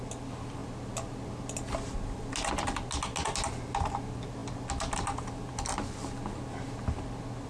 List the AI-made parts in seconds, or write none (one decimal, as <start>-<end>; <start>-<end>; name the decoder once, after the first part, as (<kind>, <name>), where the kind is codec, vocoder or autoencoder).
none